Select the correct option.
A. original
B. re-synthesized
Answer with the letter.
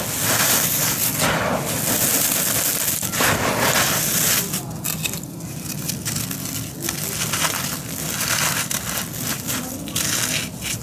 A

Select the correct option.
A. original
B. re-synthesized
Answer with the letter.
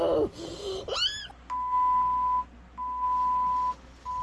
A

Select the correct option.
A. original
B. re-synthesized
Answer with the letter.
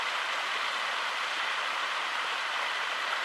B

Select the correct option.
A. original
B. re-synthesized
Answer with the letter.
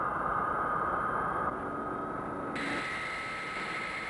A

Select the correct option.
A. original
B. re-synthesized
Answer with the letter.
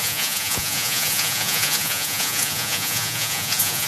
B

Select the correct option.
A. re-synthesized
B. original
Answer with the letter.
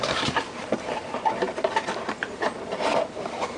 A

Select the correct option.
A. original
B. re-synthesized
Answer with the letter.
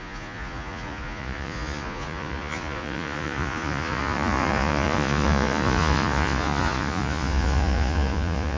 B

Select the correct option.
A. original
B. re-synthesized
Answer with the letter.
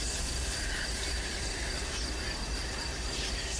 A